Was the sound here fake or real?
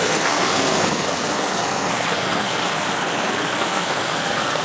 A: fake